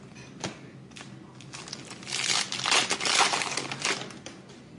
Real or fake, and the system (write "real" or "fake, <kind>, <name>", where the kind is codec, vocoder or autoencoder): real